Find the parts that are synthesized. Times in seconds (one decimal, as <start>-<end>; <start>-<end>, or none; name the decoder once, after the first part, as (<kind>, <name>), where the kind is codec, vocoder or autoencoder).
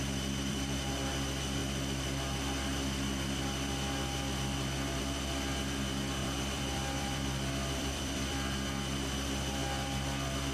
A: 0.5-1.1 (vocoder, BigVGAN v2); 6.2-8.5